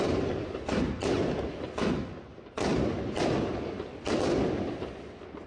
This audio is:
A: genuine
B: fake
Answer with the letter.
A